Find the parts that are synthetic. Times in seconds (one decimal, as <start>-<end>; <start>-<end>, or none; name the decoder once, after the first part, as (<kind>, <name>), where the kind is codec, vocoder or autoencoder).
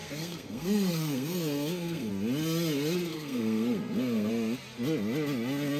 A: 0.0-2.1 (codec, SNAC); 3.1-4.3